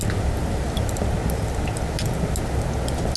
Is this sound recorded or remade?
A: recorded